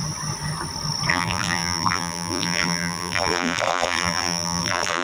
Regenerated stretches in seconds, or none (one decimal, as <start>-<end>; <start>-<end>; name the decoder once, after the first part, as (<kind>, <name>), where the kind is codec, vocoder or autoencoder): 1.1-5.0 (vocoder, BigVGAN v2)